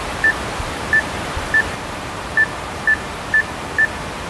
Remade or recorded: remade